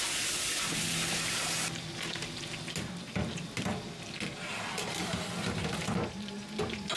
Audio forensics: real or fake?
real